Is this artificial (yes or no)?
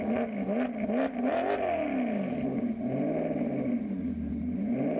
no